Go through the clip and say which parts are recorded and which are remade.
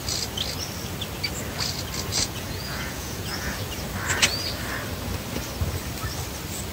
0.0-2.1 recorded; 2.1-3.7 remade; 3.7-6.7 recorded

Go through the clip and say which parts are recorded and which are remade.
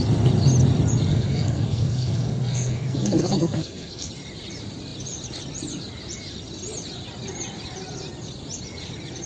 0.0-1.1 recorded; 1.1-4.1 remade; 4.1-9.3 recorded